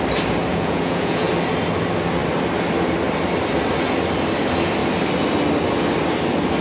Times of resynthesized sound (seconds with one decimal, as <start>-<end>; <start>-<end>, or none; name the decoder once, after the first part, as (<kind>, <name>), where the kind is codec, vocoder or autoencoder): 0.5-1.3 (vocoder, Vocos)